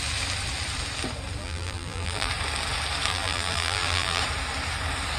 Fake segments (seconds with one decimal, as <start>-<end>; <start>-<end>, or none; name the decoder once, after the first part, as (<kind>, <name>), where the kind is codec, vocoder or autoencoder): 1.4-2.3 (vocoder, BigVGAN v2); 3.1-4.2